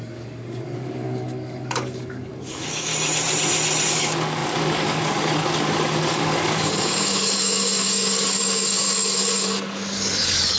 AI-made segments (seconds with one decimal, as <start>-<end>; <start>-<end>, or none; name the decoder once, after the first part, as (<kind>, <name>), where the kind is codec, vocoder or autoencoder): 0.0-2.9 (codec, DAC); 3.9-10.6

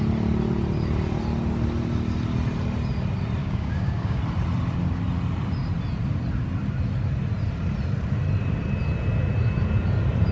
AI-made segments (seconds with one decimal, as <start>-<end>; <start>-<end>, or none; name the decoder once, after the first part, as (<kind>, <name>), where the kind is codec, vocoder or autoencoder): 3.4-4.2 (codec, DAC)